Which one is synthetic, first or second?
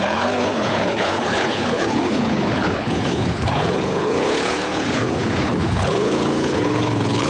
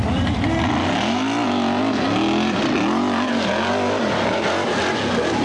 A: first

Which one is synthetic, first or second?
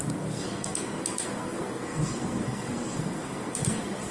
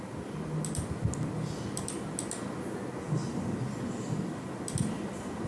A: first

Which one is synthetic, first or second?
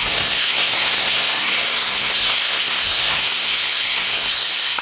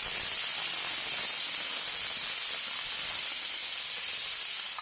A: first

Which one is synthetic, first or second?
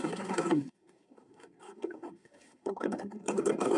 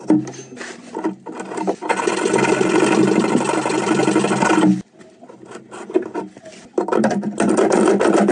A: first